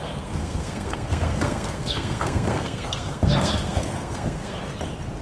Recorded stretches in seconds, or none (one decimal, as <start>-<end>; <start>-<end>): 4.6-5.2